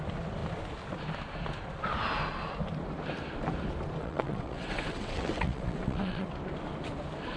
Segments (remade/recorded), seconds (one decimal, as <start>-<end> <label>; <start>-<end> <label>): 0.0-4.0 recorded; 4.0-6.3 remade; 6.3-7.4 recorded

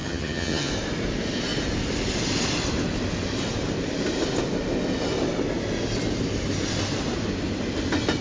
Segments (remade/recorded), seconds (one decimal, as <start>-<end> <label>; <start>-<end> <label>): 0.0-0.7 remade; 0.7-8.2 recorded

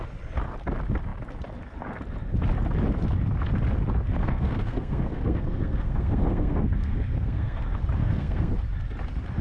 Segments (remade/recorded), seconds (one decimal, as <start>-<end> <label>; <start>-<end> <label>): 0.0-4.2 recorded; 4.2-7.6 remade; 7.6-8.0 recorded; 8.0-8.5 remade; 8.5-9.4 recorded

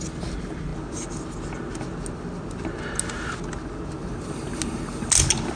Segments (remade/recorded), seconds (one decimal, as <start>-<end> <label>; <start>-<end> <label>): 0.0-5.6 recorded

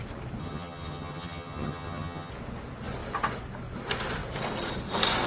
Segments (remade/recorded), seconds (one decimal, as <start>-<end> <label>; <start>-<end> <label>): 0.0-0.4 recorded; 0.4-2.3 remade; 2.3-5.3 recorded